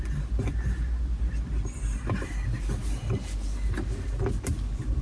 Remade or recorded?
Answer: recorded